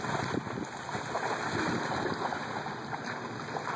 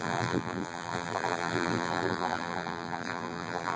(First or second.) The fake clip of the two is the second